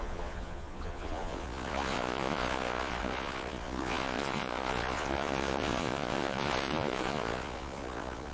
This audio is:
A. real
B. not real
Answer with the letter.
B